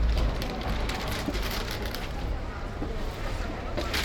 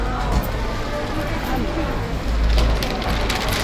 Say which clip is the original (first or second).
second